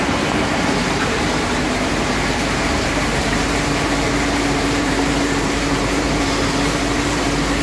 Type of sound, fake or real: fake